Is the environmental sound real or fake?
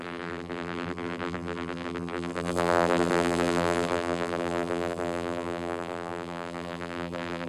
fake